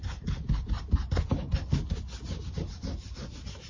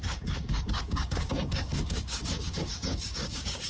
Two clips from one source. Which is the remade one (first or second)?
second